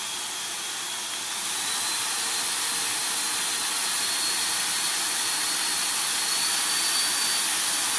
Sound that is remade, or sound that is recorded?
recorded